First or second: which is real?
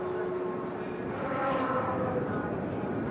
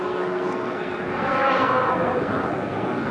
first